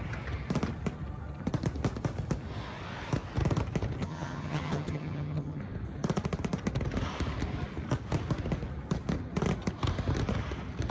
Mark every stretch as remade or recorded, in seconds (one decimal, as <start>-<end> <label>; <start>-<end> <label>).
0.0-4.0 recorded; 4.0-5.6 remade; 5.6-10.9 recorded